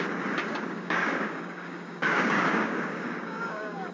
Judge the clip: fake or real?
fake